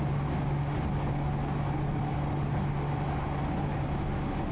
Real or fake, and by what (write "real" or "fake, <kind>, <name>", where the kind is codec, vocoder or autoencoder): real